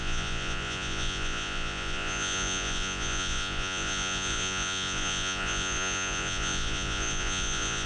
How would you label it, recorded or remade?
remade